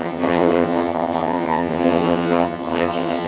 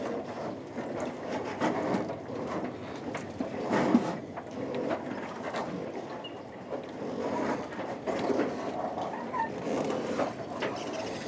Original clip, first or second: second